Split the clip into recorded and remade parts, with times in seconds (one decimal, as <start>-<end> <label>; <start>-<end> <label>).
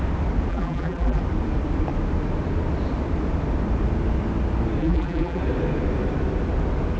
0.0-0.5 recorded; 0.5-1.2 remade; 1.2-4.8 recorded; 4.8-5.4 remade; 5.4-7.0 recorded